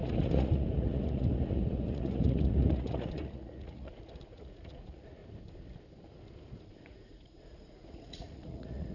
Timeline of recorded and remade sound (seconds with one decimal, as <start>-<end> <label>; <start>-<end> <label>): 0.0-5.2 remade; 5.2-6.7 recorded; 6.7-8.9 remade